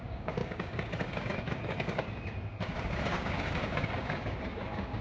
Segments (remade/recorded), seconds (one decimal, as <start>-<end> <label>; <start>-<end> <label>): 0.0-5.0 remade